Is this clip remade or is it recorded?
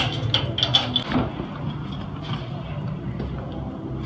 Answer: recorded